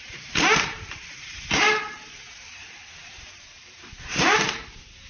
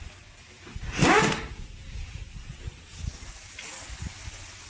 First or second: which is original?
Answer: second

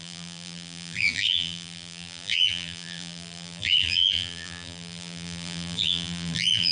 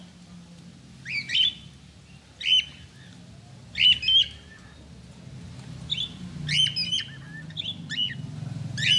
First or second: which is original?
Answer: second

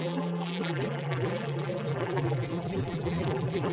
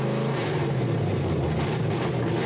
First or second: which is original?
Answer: second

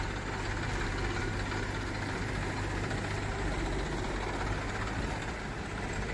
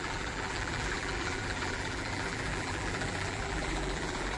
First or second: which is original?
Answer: first